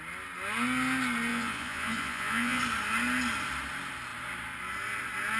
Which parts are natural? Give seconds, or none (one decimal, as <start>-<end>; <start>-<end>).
0.0-1.3; 2.6-5.4